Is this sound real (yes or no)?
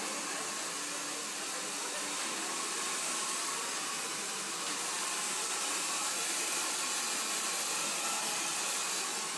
yes